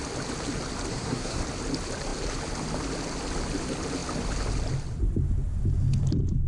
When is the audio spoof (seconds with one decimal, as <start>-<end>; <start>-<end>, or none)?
0.9-1.4